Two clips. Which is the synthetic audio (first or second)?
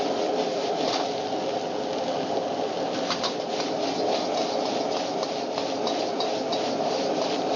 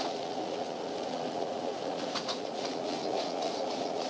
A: second